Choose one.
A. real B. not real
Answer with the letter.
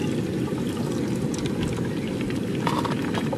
A